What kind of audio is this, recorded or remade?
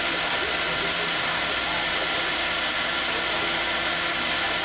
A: recorded